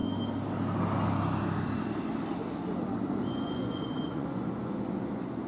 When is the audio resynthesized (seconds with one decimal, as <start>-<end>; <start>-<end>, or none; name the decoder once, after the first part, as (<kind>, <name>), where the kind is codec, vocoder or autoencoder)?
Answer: 3.3-5.5 (vocoder, Vocos)